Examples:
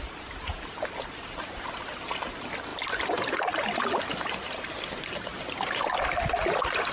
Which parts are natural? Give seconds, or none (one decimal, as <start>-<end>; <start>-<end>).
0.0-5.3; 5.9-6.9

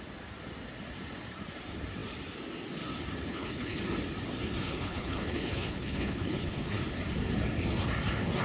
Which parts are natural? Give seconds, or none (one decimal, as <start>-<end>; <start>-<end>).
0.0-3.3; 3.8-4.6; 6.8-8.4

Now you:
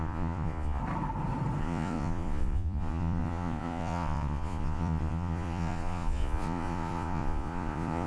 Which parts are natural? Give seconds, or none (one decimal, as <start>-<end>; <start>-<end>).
0.8-1.6